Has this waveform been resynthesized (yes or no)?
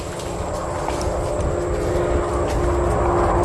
no